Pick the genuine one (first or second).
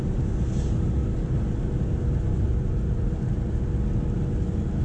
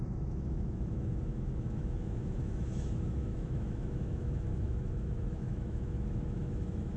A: first